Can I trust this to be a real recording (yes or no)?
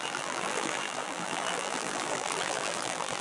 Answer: no